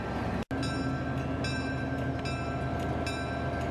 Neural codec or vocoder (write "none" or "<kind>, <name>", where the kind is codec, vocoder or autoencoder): none